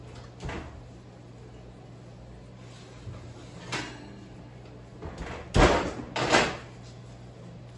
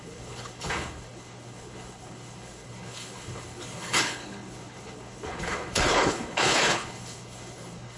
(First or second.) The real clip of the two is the first